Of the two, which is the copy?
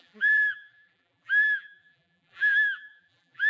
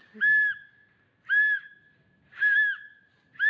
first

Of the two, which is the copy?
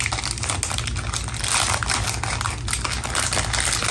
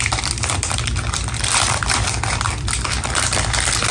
second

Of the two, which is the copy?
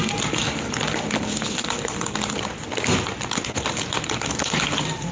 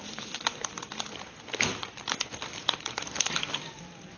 second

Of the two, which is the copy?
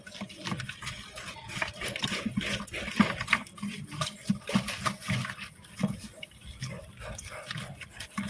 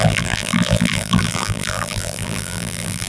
second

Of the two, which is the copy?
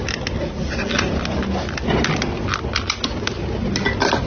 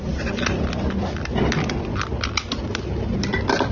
second